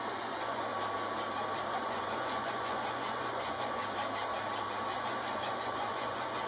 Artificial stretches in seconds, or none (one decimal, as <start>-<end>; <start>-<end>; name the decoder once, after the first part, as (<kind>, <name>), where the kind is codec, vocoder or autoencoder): 0.0-0.7 (vocoder, Vocos); 1.7-3.8; 4.9-6.5